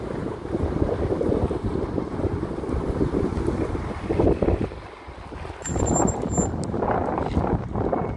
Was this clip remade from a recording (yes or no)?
no